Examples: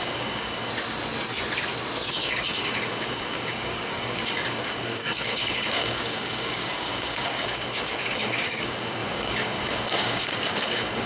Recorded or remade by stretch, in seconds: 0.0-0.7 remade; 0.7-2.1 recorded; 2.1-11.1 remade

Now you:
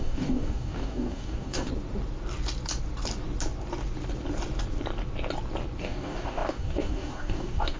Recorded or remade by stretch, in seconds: 0.0-1.7 remade; 1.7-5.8 recorded; 5.8-7.8 remade

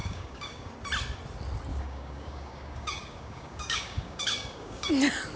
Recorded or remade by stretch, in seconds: 0.0-0.7 remade; 0.7-1.7 recorded; 1.7-4.9 remade; 4.9-5.4 recorded

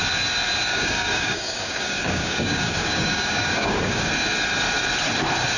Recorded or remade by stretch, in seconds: 0.0-0.7 recorded; 0.7-4.1 remade; 4.1-5.6 recorded